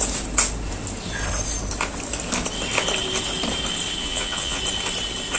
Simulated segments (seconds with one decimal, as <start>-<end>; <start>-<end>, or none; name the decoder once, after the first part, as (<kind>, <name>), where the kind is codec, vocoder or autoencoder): 4.0-4.6 (vocoder, Vocos)